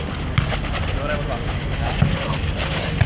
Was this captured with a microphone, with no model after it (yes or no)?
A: yes